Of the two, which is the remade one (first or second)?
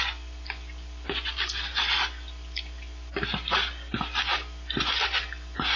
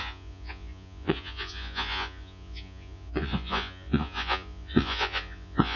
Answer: second